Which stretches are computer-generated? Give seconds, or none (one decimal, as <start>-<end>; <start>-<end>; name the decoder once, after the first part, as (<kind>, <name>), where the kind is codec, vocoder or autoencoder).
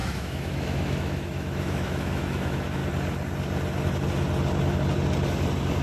0.0-2.8 (autoencoder, DAC-VAE)